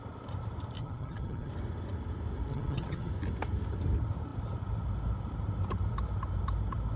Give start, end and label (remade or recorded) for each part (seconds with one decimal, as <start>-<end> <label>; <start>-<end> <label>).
0.0-0.8 recorded; 0.8-1.5 remade; 1.5-2.5 recorded; 2.5-3.1 remade; 3.1-7.0 recorded